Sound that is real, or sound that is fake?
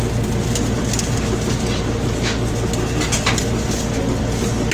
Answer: real